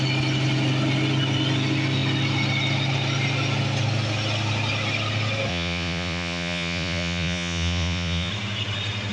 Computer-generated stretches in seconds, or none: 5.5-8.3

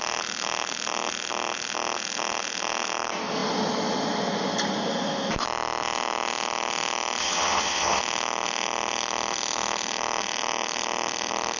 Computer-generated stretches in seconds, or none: 7.2-8.0